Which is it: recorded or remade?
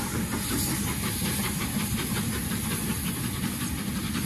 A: recorded